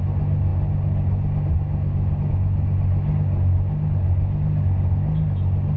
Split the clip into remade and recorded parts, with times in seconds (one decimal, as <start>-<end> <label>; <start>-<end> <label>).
0.0-5.8 recorded